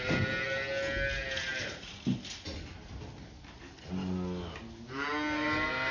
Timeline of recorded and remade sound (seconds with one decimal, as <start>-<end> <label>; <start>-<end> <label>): 0.0-5.9 recorded